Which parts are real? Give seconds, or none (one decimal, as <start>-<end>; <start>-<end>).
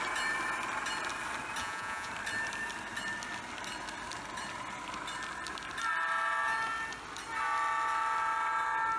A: 0.0-1.6; 2.1-9.0